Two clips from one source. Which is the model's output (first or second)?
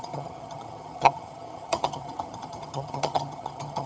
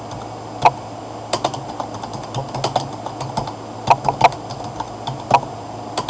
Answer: first